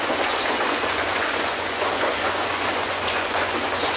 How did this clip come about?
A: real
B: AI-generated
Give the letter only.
B